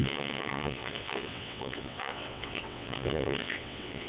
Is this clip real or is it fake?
fake